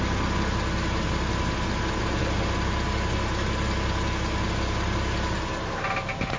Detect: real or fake real